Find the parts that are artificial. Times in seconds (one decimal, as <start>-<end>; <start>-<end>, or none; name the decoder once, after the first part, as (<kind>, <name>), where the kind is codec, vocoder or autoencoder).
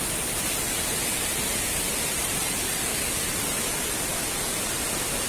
none